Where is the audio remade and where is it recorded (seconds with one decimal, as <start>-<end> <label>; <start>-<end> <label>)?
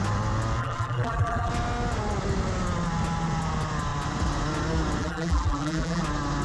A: 0.0-0.6 recorded; 0.6-1.5 remade; 1.5-5.0 recorded; 5.0-6.0 remade; 6.0-6.4 recorded